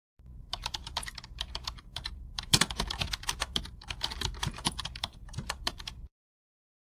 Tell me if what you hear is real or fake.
fake